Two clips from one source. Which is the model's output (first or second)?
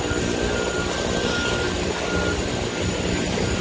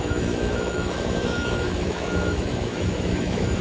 second